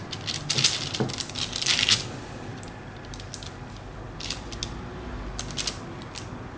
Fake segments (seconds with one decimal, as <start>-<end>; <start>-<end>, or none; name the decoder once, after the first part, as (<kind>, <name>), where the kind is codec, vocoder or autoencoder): none